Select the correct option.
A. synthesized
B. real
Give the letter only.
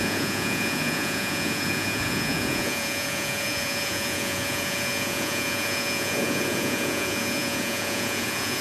A